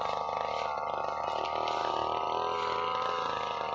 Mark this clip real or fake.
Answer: real